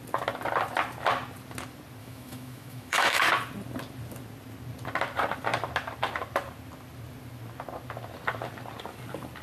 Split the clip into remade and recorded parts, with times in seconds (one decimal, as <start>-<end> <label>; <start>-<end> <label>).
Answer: 0.0-2.0 recorded; 2.0-3.3 remade; 3.3-9.4 recorded